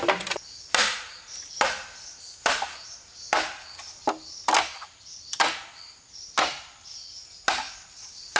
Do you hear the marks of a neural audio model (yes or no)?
no